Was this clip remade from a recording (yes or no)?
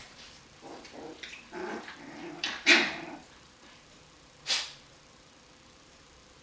yes